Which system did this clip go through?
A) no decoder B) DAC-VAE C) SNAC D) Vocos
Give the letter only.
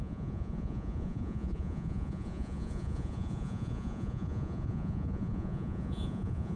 D